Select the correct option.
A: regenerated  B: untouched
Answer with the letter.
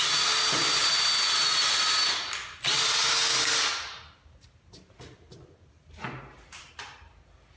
B